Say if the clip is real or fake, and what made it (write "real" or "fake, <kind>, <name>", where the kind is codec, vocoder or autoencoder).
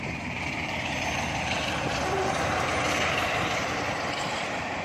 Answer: fake, vocoder, BigVGAN v2